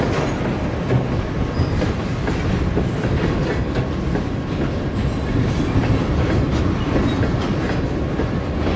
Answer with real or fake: real